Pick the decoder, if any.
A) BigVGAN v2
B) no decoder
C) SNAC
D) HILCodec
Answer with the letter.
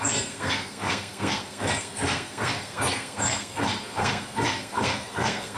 C